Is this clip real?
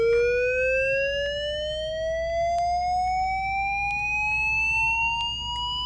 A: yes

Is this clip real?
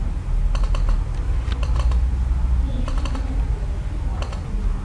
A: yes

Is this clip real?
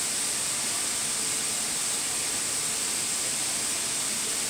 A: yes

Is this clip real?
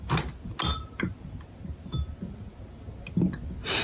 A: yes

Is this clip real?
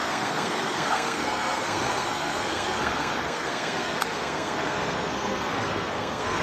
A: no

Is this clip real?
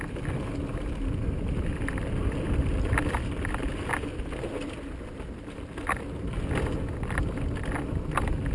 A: yes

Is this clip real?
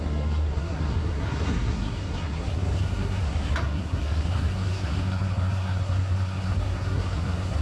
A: no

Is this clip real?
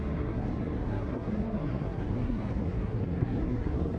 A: no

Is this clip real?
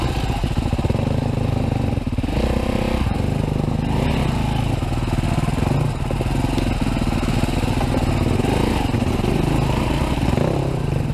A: yes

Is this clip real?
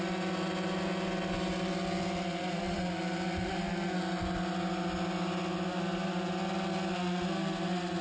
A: yes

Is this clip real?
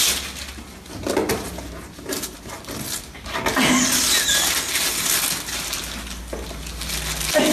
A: yes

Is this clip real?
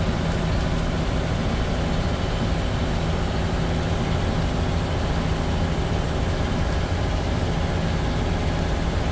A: yes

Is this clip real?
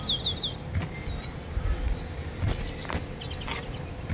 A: yes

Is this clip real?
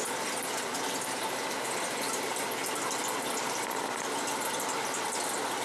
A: yes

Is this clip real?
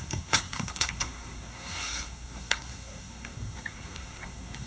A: no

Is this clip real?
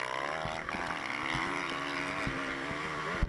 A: yes